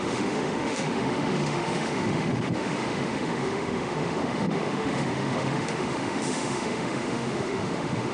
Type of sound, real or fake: fake